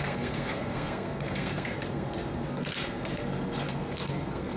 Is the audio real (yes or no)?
no